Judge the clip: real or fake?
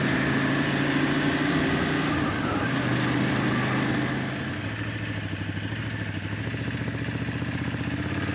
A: real